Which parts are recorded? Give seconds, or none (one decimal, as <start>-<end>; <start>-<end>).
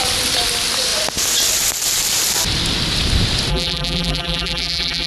0.0-3.5